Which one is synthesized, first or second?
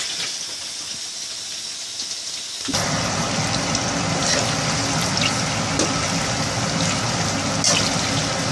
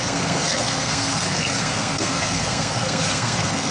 second